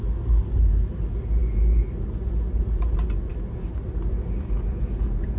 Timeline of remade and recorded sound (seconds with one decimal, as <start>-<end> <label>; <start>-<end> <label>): 0.0-5.4 recorded